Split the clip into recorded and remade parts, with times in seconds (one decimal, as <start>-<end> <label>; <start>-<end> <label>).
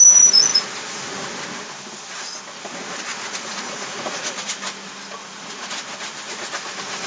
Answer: 0.0-3.1 recorded; 3.1-4.5 remade; 4.5-5.2 recorded; 5.2-5.7 remade; 5.7-7.1 recorded